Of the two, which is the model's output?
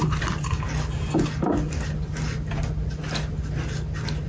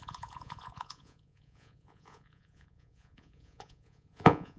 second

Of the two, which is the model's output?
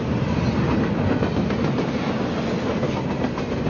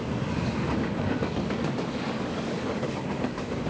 second